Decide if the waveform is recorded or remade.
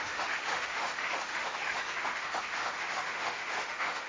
remade